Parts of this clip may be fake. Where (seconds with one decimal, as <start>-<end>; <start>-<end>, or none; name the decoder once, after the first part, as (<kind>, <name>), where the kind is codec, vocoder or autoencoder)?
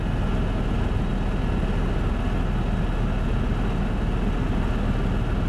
none